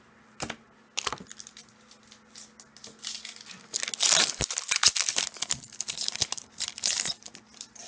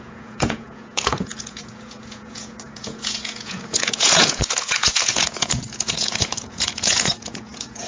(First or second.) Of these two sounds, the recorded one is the first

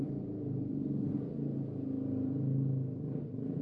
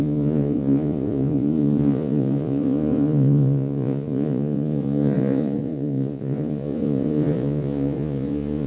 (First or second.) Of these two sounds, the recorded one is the first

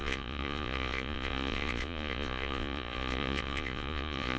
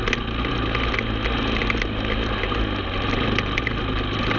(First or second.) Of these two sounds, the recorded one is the second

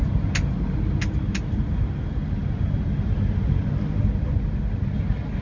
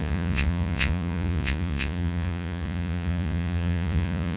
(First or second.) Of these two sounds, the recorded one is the first